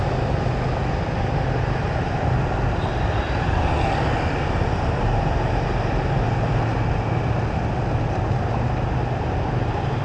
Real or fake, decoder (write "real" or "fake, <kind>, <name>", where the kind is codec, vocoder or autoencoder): real